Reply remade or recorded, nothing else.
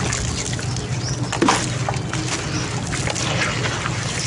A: recorded